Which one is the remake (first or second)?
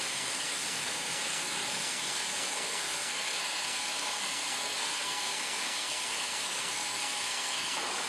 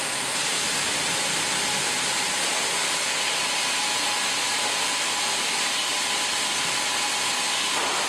first